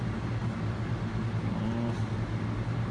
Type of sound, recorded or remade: recorded